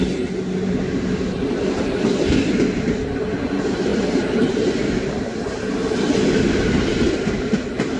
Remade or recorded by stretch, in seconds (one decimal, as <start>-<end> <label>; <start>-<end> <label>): 0.0-3.9 recorded; 3.9-4.6 remade; 4.6-8.0 recorded